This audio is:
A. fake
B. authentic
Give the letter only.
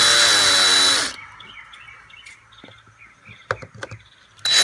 B